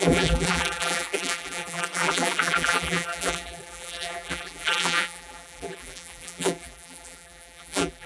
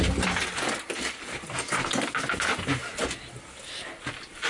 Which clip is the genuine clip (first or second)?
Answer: second